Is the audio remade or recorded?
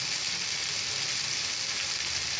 recorded